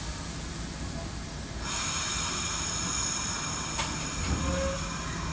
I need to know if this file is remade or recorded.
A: recorded